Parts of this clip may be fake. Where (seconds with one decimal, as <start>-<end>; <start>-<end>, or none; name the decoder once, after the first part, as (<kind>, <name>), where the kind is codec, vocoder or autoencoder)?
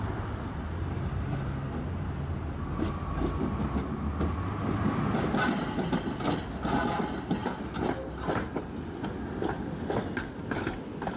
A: none